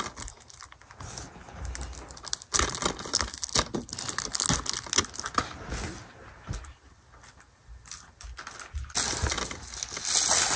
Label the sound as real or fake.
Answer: real